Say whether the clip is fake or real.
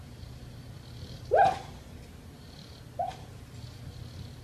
real